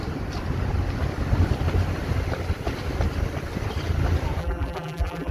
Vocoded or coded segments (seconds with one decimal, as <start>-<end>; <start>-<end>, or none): 4.4-5.3